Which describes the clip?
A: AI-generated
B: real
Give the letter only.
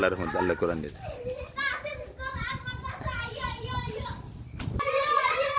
B